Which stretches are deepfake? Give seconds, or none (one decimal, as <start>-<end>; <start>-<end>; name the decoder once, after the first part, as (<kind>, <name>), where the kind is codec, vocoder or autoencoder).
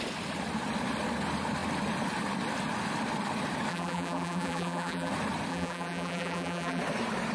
3.7-5.1 (vocoder, BigVGAN v2); 5.5-6.8